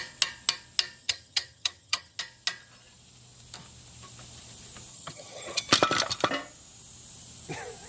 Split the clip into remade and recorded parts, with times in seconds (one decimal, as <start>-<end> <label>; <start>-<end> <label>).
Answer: 0.0-1.0 recorded; 1.0-2.2 remade; 2.2-4.9 recorded; 4.9-5.6 remade; 5.6-7.9 recorded